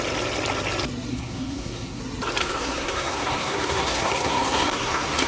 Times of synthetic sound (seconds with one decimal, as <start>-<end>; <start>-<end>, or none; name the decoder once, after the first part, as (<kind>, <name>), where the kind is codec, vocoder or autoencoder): 1.1-2.0 (codec, SNAC); 2.4-5.3